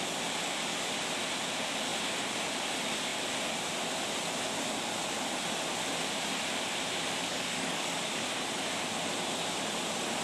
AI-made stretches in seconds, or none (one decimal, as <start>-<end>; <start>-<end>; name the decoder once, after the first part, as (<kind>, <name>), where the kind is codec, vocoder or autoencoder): 7.3-8.1 (codec, DAC)